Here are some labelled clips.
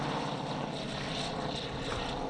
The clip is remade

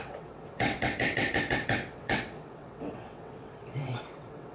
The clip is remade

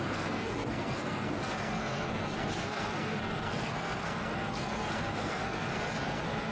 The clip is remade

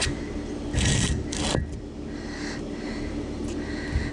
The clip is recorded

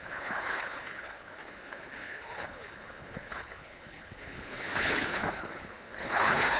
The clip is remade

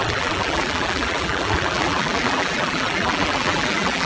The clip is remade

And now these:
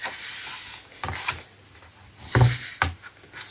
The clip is recorded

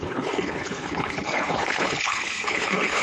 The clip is remade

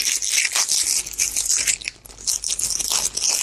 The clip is recorded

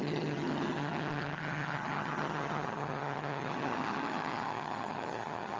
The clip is remade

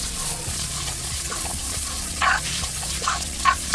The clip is remade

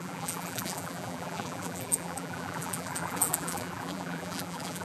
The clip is remade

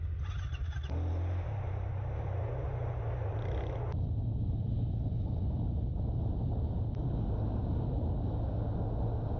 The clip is recorded